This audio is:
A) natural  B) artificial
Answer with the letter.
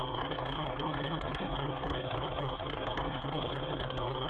B